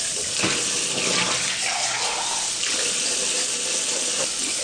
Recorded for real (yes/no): yes